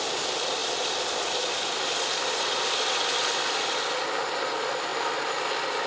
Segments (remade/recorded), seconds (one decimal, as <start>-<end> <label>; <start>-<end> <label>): 0.0-5.9 recorded